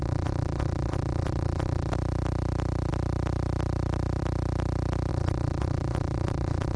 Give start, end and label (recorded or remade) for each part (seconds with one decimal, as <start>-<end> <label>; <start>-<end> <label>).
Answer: 0.0-1.9 remade; 1.9-5.1 recorded; 5.1-6.8 remade